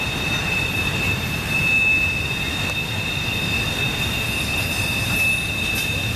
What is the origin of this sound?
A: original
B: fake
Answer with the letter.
A